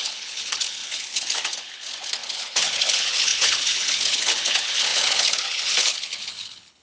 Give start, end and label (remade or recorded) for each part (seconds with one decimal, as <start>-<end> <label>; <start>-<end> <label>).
0.0-6.8 remade